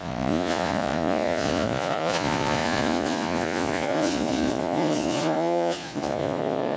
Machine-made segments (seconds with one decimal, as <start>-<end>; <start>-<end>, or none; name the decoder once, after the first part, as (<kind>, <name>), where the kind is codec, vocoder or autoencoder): 0.0-6.8 (vocoder, Vocos)